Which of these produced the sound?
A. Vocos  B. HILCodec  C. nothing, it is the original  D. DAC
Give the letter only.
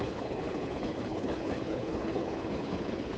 B